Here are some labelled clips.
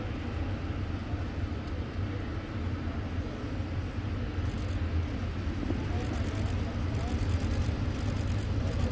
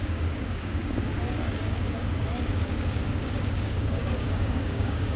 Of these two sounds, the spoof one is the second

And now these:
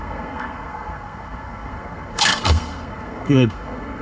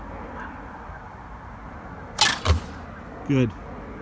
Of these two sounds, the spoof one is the first